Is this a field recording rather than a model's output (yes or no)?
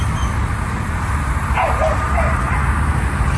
yes